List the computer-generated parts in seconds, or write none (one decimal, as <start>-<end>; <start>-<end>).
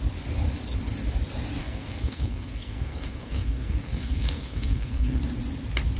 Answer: 1.6-5.2